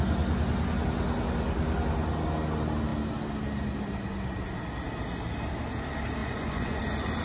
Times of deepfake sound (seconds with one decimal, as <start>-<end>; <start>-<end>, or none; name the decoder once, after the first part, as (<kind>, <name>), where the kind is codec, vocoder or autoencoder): 6.2-6.8 (vocoder, Vocos)